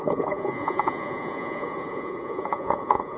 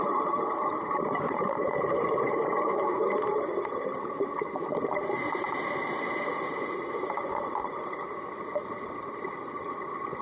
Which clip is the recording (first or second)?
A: second